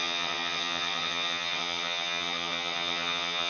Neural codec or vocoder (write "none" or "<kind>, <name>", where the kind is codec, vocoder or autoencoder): vocoder, HiFi-GAN